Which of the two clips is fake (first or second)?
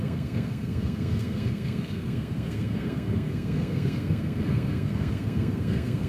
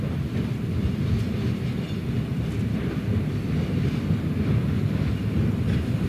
first